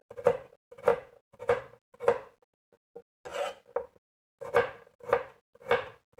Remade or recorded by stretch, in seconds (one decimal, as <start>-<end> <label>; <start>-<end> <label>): 0.0-0.9 recorded; 0.9-1.6 remade; 1.6-6.2 recorded